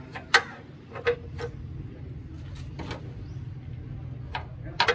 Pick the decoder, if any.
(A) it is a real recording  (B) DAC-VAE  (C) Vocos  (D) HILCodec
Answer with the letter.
A